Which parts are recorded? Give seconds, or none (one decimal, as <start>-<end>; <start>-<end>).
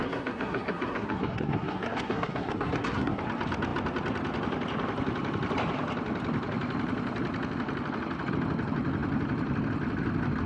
3.2-10.5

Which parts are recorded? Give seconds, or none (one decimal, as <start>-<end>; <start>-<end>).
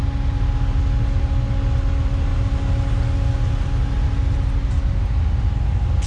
0.0-6.1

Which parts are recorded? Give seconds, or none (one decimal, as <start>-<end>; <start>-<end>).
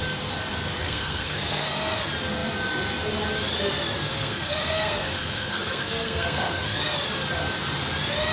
0.0-0.8; 1.7-4.1; 6.8-8.3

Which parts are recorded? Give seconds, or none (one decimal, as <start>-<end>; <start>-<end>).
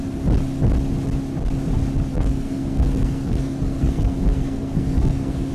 0.0-2.1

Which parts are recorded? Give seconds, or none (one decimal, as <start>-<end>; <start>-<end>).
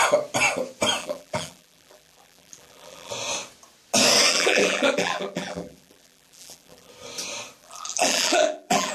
0.0-1.0; 3.1-4.3; 6.9-7.6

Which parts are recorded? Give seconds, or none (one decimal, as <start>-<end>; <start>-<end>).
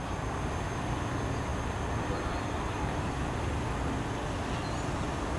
0.0-5.4